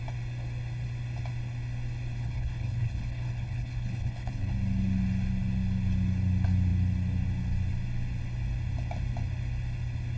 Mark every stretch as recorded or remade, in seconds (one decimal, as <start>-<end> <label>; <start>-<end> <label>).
0.0-2.2 recorded; 2.2-4.5 remade; 4.5-10.2 recorded

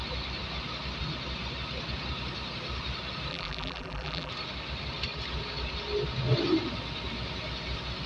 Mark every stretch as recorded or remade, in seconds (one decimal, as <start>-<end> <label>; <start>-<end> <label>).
0.0-3.3 recorded; 3.3-4.3 remade; 4.3-8.1 recorded

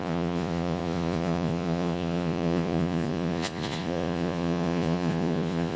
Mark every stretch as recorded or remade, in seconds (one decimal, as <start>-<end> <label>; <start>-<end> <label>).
0.0-5.8 remade